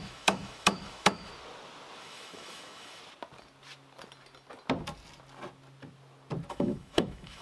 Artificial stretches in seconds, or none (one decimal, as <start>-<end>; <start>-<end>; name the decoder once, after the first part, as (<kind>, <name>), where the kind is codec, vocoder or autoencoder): 0.0-1.3 (autoencoder, DAC-VAE); 2.0-3.0; 6.5-7.4